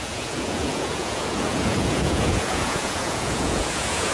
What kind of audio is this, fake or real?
fake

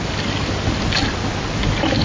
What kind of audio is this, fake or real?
real